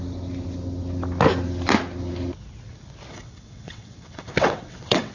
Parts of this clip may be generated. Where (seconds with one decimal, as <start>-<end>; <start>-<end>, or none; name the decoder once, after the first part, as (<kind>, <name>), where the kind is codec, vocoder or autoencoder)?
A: 3.1-5.1 (vocoder, WaveNeXt)